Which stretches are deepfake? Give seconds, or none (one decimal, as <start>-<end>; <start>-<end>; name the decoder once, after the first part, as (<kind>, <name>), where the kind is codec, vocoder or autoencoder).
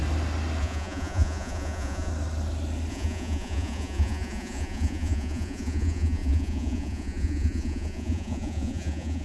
0.6-2.1 (vocoder, Vocos); 2.9-9.2